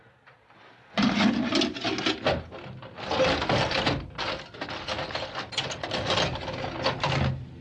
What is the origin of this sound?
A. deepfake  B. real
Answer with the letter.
B